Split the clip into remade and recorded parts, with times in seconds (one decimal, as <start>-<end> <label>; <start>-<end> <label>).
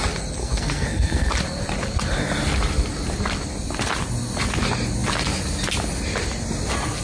0.0-0.4 recorded; 0.4-1.3 remade; 1.3-7.0 recorded